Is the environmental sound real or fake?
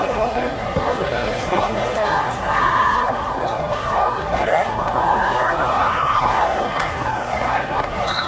fake